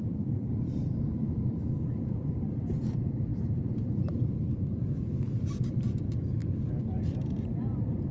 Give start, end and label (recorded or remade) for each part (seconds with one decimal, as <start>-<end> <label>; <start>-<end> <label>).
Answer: 0.0-6.4 remade; 6.4-7.0 recorded; 7.0-8.1 remade

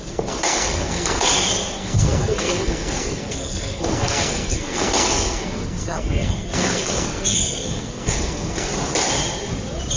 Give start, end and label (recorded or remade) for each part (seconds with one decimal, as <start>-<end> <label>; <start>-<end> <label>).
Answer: 0.0-8.7 remade; 8.7-10.0 recorded

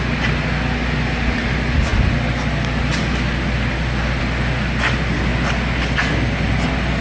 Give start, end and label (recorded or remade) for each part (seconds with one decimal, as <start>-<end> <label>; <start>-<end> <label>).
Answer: 0.0-7.0 recorded

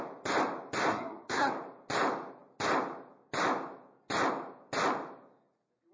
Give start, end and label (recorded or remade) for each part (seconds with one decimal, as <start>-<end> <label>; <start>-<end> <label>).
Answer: 0.0-0.9 recorded; 0.9-1.5 remade; 1.5-5.9 recorded